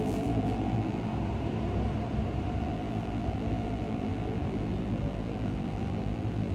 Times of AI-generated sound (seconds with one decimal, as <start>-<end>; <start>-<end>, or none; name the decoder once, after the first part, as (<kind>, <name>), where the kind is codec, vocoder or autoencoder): 0.0-1.1 (vocoder, BigVGAN v2); 2.6-6.5